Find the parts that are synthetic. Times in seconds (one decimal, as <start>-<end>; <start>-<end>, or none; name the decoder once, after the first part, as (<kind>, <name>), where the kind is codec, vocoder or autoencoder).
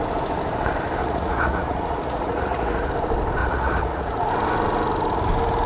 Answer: 1.0-2.9 (vocoder, Vocos); 3.4-4.3